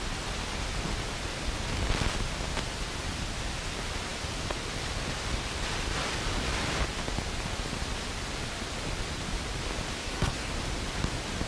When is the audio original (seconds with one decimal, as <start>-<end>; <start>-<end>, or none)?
0.0-10.0; 10.5-11.5

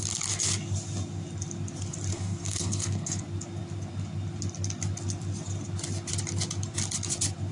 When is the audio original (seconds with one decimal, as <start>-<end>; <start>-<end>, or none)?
0.0-2.1; 3.2-7.5

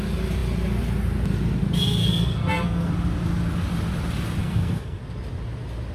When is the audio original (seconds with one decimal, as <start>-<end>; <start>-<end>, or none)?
0.0-2.0; 2.9-4.4; 5.0-5.9

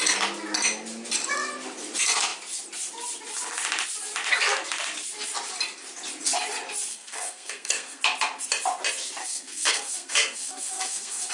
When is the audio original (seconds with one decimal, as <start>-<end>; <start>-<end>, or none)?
0.0-6.9; 8.0-9.2